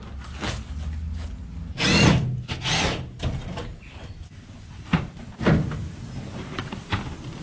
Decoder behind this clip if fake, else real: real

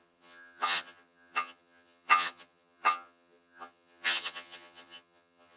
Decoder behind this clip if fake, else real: fake, vocoder, HiFi-GAN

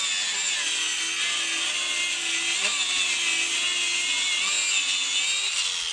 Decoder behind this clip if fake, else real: real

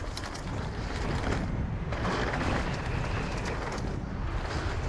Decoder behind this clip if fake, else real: real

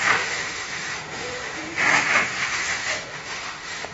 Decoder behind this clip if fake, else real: fake, autoencoder, DAC-VAE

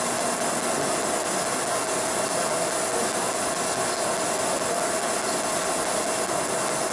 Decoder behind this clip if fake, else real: real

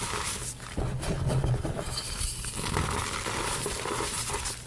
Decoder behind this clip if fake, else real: real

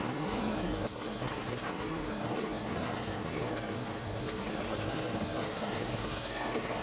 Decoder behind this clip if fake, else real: fake, codec, SNAC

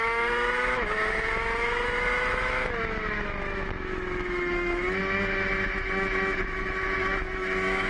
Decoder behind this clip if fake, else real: fake, autoencoder, DAC-VAE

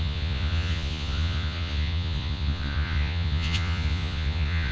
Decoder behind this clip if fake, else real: fake, vocoder, Vocos